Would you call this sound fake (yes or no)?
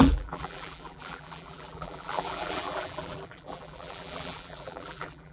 yes